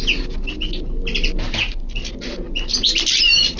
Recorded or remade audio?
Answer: recorded